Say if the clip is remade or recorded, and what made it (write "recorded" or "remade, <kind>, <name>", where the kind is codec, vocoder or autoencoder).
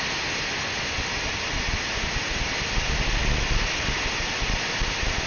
recorded